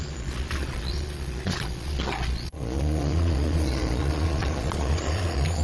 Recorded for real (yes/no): no